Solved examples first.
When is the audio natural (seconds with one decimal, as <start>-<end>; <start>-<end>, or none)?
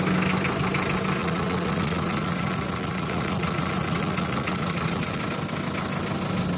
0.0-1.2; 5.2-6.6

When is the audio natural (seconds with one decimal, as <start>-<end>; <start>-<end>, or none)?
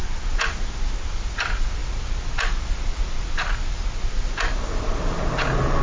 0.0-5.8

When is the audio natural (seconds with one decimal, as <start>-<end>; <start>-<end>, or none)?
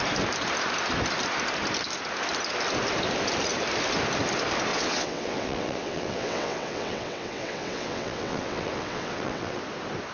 0.0-4.7; 9.6-10.1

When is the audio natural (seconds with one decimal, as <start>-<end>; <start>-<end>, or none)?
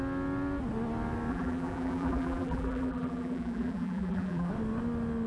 0.0-1.3; 4.5-5.3